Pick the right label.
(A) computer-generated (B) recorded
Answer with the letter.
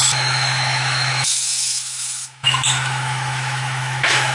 A